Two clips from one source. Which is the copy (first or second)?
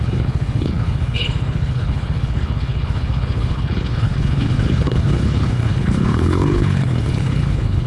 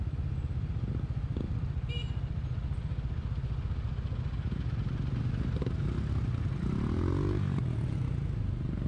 first